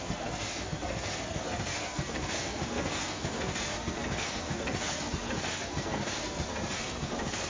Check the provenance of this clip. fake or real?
fake